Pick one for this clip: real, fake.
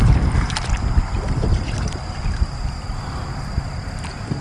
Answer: real